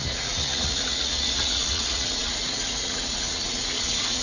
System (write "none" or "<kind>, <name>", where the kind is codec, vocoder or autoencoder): vocoder, Vocos